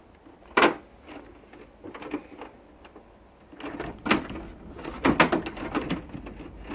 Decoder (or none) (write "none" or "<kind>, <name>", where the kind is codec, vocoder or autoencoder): none